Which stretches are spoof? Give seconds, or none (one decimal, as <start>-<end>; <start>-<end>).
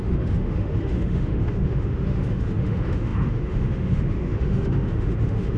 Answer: 0.0-5.6